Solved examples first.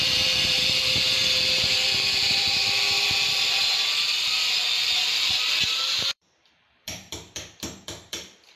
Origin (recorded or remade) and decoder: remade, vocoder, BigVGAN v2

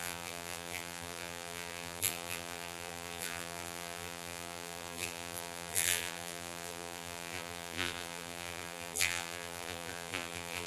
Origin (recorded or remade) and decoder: remade, vocoder, BigVGAN v2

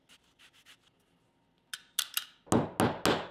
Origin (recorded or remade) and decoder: recorded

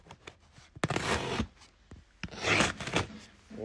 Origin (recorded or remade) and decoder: recorded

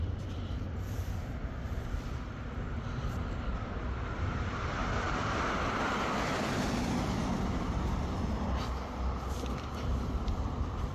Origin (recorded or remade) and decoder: remade, vocoder, BigVGAN v2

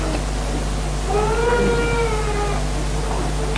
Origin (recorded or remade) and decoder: recorded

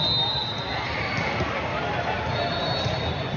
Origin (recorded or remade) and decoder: recorded